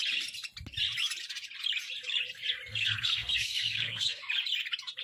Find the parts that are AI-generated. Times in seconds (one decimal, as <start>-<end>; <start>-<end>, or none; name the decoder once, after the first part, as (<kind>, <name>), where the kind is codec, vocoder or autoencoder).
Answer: 2.7-4.2 (codec, SNAC)

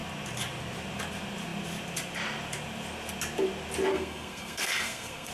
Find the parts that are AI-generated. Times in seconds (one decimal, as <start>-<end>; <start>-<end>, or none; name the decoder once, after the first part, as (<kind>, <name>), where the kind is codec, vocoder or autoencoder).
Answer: 3.9-5.3 (codec, SNAC)

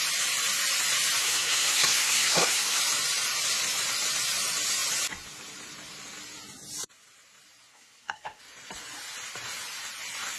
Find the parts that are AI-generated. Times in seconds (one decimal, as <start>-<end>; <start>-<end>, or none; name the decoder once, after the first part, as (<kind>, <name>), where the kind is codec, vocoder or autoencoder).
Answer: 1.2-2.8 (codec, SNAC); 7.7-8.4

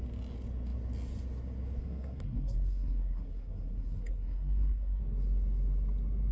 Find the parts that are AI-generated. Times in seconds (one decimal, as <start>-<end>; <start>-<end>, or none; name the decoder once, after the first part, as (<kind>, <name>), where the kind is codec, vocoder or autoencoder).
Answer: 1.8-5.0 (codec, SNAC)

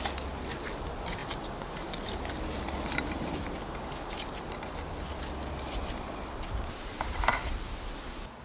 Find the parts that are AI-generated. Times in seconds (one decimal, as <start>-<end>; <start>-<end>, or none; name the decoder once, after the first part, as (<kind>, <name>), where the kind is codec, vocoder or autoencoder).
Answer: none